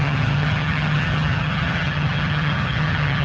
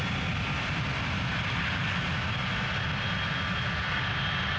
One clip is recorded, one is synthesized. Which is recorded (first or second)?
second